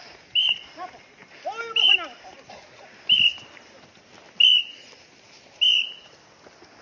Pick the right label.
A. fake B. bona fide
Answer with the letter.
B